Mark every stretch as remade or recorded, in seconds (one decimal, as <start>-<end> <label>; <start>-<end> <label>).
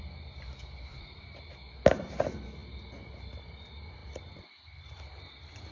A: 0.0-5.7 recorded